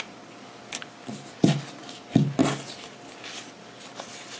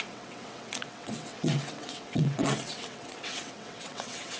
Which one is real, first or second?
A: first